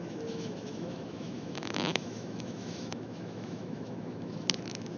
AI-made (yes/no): yes